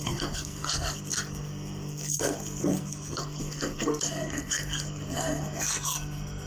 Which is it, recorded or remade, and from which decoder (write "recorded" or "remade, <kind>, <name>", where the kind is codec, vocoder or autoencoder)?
remade, codec, SNAC